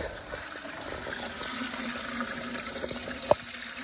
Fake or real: real